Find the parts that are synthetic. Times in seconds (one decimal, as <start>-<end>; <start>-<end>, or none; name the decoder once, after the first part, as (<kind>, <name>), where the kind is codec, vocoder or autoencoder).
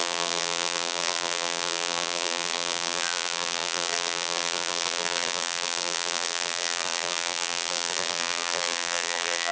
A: 0.0-9.5 (vocoder, BigVGAN v2)